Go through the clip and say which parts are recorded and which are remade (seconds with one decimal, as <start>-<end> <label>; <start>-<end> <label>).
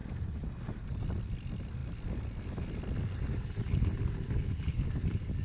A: 0.0-5.4 recorded